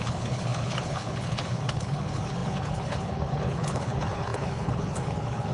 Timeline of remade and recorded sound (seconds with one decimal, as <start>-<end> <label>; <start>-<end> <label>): 0.0-5.5 remade